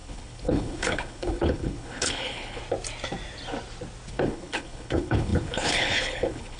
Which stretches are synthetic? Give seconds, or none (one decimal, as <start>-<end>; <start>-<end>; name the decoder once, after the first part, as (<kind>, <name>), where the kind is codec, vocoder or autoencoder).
0.0-2.6 (codec, HILCodec); 4.1-6.6

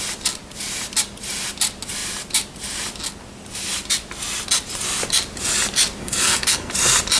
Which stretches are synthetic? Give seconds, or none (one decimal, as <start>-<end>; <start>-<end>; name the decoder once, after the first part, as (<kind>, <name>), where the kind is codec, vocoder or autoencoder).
6.0-6.7 (codec, SNAC)